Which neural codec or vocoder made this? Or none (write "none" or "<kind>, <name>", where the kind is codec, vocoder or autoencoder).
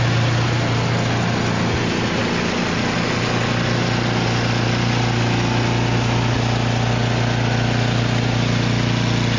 none